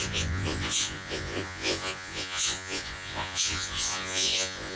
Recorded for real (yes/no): no